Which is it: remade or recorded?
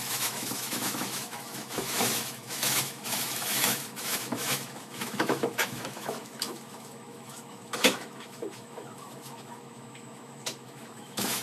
remade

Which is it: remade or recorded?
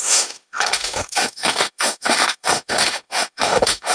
remade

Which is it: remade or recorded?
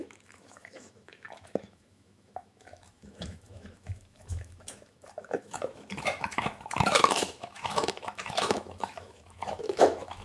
remade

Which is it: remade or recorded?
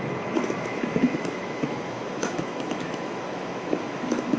remade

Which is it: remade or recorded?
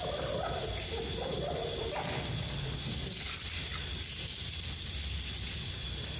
recorded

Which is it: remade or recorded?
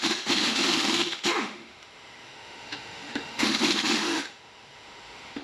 remade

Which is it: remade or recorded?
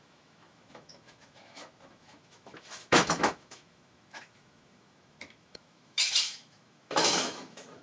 remade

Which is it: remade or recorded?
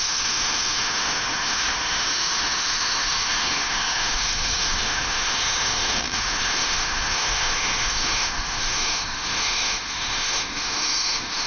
remade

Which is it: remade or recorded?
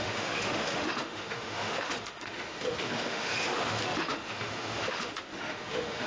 remade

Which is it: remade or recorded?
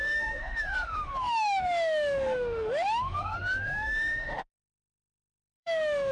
remade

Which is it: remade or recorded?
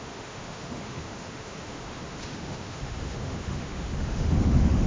remade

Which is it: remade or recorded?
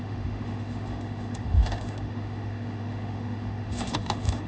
remade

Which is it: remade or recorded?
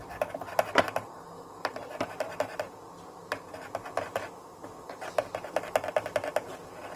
recorded